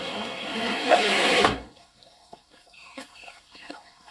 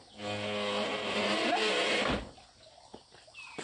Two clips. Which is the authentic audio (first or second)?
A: second